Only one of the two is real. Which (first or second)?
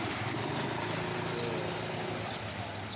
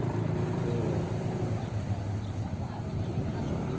first